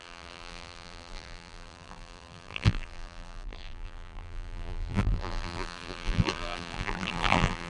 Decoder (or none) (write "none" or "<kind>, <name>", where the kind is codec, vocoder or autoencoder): vocoder, BigVGAN v2